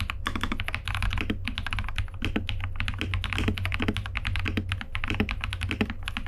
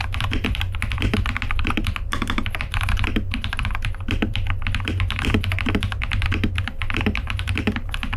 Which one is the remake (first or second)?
second